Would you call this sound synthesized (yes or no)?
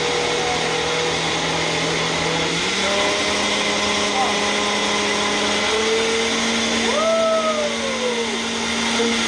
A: no